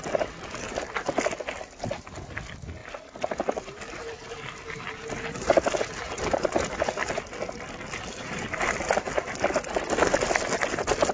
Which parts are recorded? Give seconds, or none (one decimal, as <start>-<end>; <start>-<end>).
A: 0.0-11.1